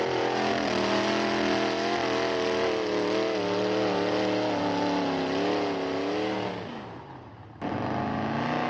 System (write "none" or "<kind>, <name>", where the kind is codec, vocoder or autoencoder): none